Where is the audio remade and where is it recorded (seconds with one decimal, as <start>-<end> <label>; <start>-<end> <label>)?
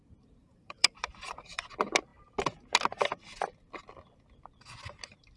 0.0-0.4 recorded; 0.4-1.7 remade; 1.7-5.4 recorded